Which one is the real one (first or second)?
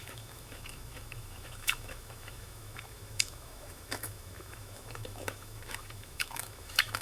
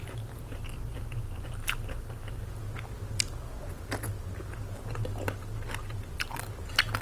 second